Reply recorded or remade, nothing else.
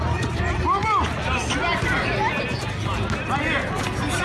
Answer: recorded